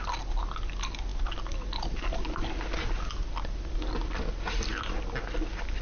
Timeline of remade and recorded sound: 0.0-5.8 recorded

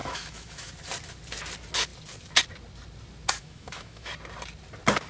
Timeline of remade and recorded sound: 0.0-0.7 remade; 0.7-3.4 recorded; 3.4-4.1 remade; 4.1-5.1 recorded

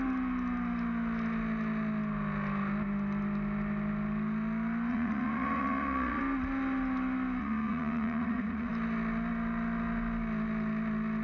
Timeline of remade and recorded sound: 0.0-4.9 recorded; 4.9-6.2 remade; 6.2-7.4 recorded; 7.4-8.7 remade; 8.7-11.2 recorded